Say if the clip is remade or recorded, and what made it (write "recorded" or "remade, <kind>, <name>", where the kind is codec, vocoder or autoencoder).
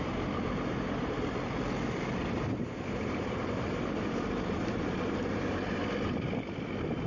remade, vocoder, BigVGAN v2